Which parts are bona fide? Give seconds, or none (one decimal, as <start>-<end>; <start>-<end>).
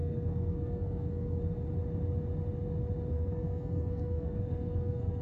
1.4-3.1